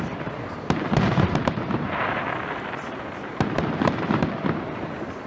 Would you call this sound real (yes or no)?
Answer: no